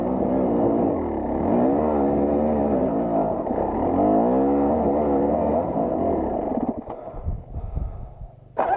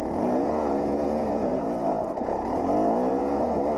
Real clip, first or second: first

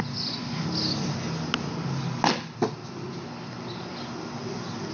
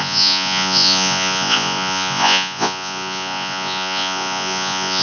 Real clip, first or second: first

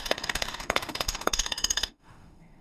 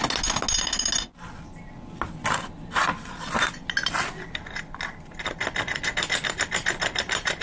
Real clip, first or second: second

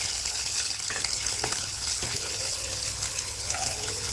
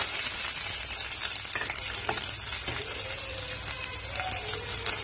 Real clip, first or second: second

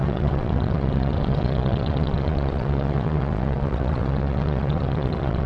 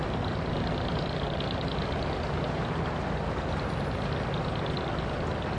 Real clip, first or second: second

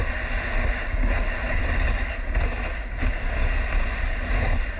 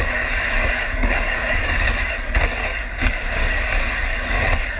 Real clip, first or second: first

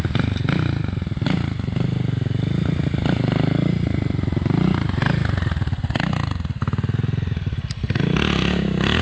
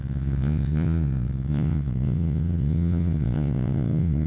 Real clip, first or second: first